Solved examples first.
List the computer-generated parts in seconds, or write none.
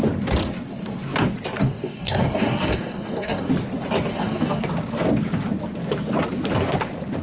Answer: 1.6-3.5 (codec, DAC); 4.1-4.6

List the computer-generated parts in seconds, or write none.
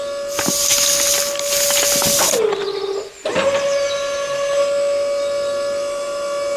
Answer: none